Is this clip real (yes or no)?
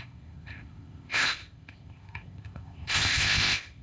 no